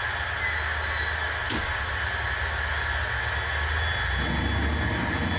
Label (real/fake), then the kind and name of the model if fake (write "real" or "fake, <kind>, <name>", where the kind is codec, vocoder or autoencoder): real